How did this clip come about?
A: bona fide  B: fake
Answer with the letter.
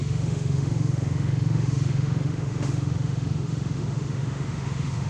B